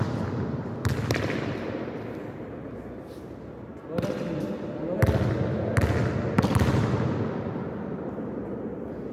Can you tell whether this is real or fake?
real